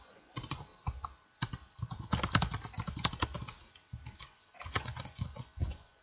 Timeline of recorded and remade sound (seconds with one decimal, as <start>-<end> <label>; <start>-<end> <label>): 0.0-0.7 remade; 0.7-4.3 recorded; 4.3-6.0 remade